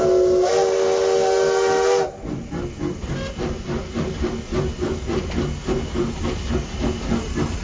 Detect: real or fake real